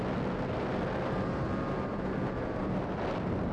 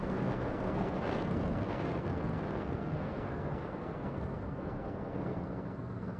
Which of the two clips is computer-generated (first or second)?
second